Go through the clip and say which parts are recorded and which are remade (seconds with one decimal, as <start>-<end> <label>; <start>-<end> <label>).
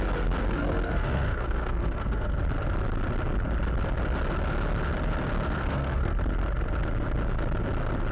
0.0-0.5 recorded; 0.5-2.4 remade; 2.4-5.6 recorded; 5.6-6.2 remade; 6.2-8.1 recorded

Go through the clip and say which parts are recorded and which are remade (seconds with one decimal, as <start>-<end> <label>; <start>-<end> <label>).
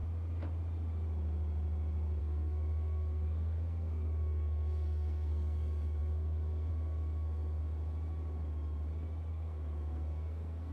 0.0-2.2 recorded; 2.2-7.6 remade; 7.6-9.3 recorded; 9.3-10.7 remade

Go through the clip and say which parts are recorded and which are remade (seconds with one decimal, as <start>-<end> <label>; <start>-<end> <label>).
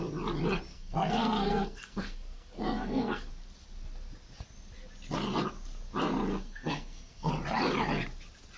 0.0-0.7 recorded; 0.7-3.3 remade; 3.3-6.3 recorded; 6.3-7.3 remade; 7.3-8.6 recorded